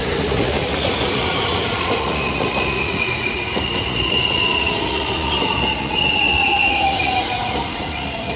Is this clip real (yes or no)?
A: no